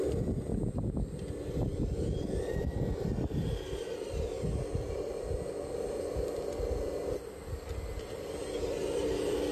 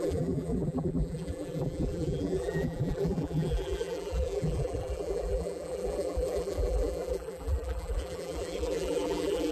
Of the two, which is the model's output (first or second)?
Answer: second